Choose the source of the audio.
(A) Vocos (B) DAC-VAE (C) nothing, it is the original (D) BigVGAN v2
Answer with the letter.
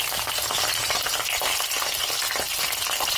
C